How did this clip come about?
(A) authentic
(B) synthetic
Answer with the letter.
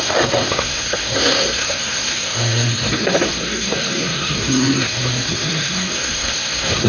B